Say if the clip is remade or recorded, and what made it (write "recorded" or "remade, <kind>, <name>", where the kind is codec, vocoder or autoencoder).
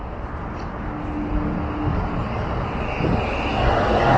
recorded